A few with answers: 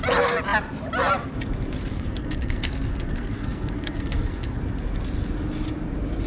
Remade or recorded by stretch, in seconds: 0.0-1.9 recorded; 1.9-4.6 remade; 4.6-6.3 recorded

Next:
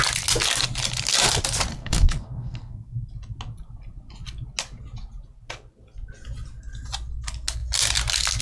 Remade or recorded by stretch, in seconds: 0.0-1.7 recorded; 1.7-3.1 remade; 3.1-8.4 recorded

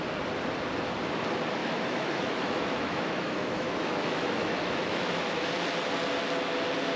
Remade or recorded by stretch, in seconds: 0.0-1.6 recorded; 1.6-5.5 remade; 5.5-7.0 recorded

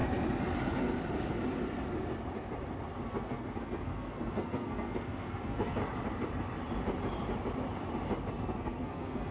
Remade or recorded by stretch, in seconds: 0.0-3.1 recorded; 3.1-5.8 remade; 5.8-8.3 recorded; 8.3-9.3 remade